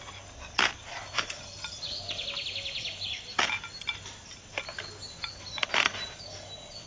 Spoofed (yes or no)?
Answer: no